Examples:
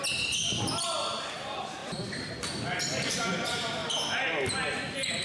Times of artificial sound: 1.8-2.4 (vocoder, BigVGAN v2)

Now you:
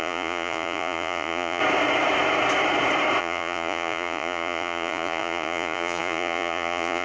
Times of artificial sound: 0.0-1.6 (vocoder, Vocos); 3.2-7.0

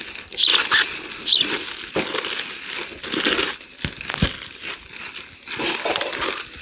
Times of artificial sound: none

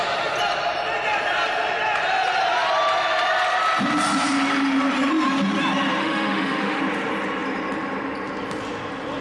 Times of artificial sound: 6.0-6.8 (autoencoder, DAC-VAE)

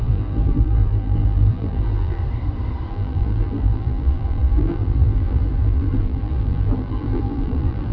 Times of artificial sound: 0.0-2.2 (vocoder, BigVGAN v2); 2.9-7.9

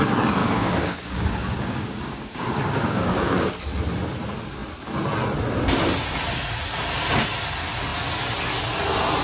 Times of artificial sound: 0.4-3.5 (codec, DAC)

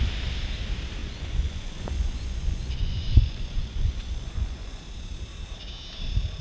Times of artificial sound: 1.0-4.8 (vocoder, Vocos)

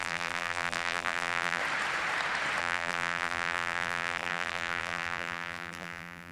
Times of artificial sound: 0.0-1.6 (vocoder, BigVGAN v2); 2.6-6.3